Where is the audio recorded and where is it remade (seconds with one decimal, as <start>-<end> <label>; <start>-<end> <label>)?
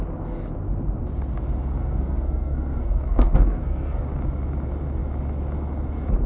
0.0-1.8 recorded; 1.8-4.0 remade; 4.0-6.3 recorded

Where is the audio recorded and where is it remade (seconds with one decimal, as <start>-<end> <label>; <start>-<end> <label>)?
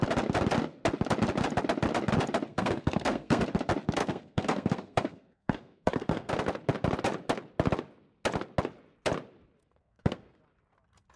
0.0-2.5 recorded; 2.5-3.4 remade; 3.4-4.0 recorded; 4.0-6.3 remade; 6.3-9.6 recorded; 9.6-10.4 remade; 10.4-11.2 recorded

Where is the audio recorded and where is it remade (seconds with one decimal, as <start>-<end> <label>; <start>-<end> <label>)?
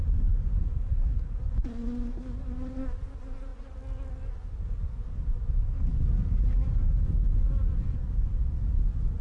0.0-0.6 recorded; 0.6-1.4 remade; 1.4-9.2 recorded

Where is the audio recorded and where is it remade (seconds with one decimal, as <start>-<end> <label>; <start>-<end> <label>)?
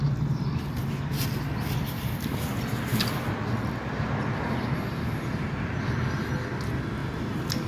0.0-7.7 recorded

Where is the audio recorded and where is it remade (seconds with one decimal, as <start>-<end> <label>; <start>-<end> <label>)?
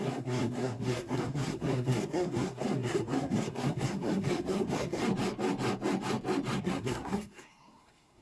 0.0-5.0 remade; 5.0-6.6 recorded; 6.6-8.2 remade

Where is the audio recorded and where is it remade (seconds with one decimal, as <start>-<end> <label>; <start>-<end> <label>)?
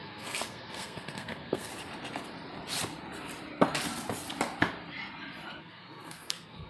0.0-1.7 remade; 1.7-5.6 recorded; 5.6-6.7 remade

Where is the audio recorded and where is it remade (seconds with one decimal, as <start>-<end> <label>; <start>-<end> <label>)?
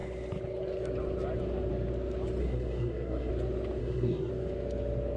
0.0-2.4 recorded; 2.4-3.3 remade; 3.3-3.8 recorded; 3.8-4.3 remade; 4.3-5.2 recorded